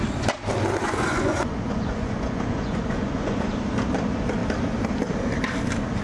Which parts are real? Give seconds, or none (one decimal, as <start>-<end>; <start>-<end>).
0.0-0.8; 3.5-6.0